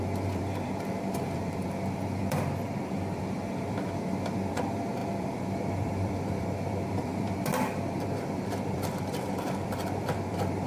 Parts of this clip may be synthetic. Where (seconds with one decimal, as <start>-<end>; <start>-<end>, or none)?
0.0-10.7